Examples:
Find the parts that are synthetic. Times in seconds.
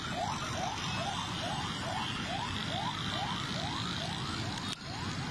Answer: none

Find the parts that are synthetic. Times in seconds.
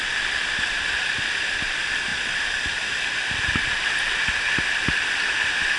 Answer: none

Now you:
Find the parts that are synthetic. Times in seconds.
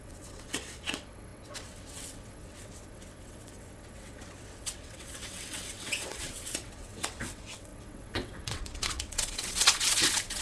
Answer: 0.0-10.4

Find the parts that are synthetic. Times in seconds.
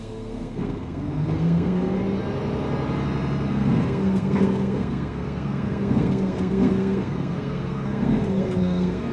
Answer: 0.0-2.0; 3.5-9.1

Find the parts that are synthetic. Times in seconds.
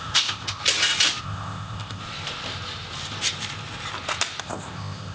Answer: 0.0-0.6; 1.2-2.0; 4.4-5.1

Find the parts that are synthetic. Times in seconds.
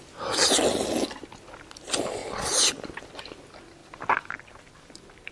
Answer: none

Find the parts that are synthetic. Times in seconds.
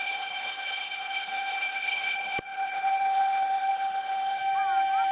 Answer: 0.0-4.4